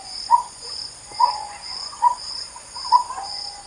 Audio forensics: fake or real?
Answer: fake